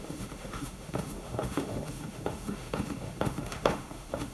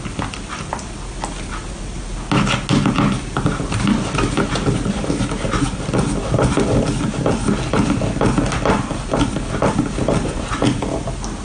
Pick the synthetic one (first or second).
first